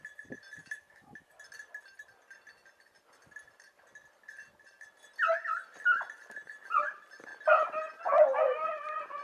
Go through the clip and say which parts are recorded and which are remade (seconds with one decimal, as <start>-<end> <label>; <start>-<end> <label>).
0.0-0.6 recorded; 0.6-1.3 remade; 1.3-9.2 recorded